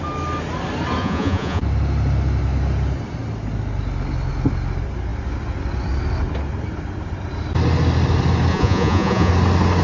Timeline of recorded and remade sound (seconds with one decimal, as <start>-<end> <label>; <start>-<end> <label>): 0.0-1.0 recorded; 1.0-1.6 remade; 1.6-8.5 recorded; 8.5-9.3 remade; 9.3-9.8 recorded